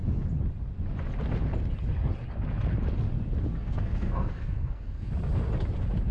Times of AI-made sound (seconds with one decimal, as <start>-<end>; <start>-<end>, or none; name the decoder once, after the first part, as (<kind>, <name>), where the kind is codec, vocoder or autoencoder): 3.5-5.1 (codec, SNAC)